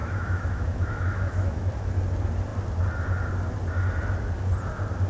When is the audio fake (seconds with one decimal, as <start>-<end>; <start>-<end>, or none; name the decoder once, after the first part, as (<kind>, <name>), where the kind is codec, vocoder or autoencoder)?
0.0-1.7 (autoencoder, DAC-VAE)